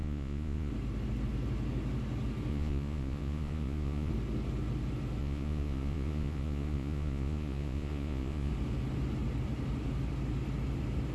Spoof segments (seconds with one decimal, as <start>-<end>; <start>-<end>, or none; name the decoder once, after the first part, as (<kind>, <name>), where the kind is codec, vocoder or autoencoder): 0.0-0.7 (vocoder, Vocos); 2.5-4.1; 5.2-8.5